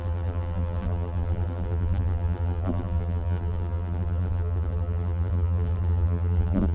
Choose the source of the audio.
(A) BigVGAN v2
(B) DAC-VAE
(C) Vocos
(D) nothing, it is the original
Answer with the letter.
A